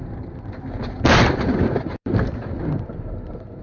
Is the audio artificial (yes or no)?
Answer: yes